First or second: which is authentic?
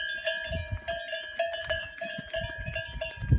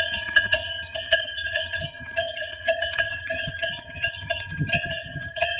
first